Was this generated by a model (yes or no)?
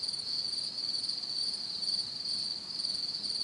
no